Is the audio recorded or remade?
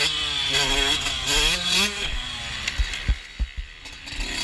recorded